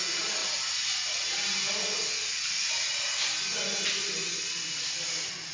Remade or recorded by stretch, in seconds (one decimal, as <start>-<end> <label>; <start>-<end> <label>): 0.0-5.5 recorded